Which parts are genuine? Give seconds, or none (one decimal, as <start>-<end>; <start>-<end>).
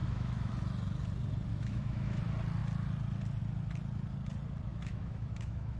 0.5-1.5; 2.2-4.7